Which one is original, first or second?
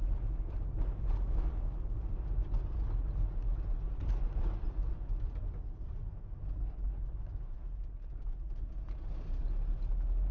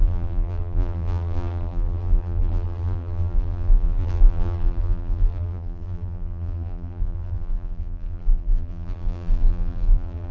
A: first